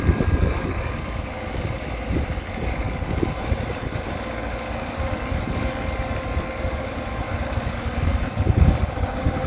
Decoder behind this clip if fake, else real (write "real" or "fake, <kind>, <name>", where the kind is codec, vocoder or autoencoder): fake, codec, DAC